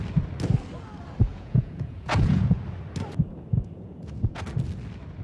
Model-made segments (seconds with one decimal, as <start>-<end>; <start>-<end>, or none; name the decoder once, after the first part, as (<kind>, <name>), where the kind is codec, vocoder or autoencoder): 1.3-2.6 (vocoder, Vocos); 3.5-4.4